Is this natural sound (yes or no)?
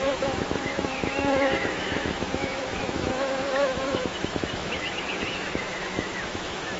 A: no